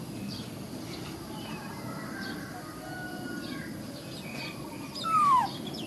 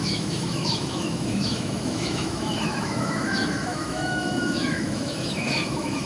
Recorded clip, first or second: first